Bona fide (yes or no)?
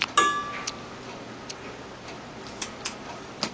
yes